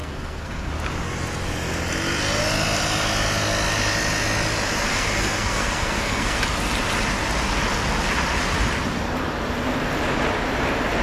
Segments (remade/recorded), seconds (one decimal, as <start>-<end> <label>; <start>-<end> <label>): 0.0-0.7 remade; 0.7-4.9 recorded; 4.9-6.4 remade; 6.4-11.0 recorded